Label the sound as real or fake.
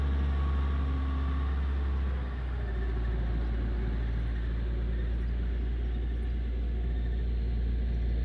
real